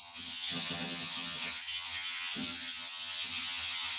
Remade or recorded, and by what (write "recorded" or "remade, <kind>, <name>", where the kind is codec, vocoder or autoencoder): remade, vocoder, HiFi-GAN